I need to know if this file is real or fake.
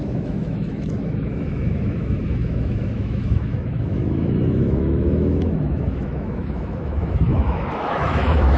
fake